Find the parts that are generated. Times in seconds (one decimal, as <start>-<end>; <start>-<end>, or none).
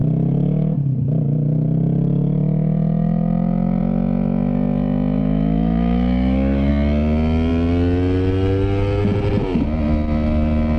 5.2-6.7